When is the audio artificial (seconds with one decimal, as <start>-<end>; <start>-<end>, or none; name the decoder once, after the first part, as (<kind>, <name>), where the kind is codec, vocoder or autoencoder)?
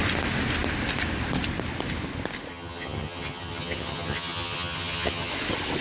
2.5-5.3 (vocoder, HiFi-GAN)